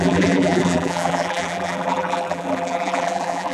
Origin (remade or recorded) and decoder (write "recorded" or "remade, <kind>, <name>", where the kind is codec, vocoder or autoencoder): remade, vocoder, BigVGAN v2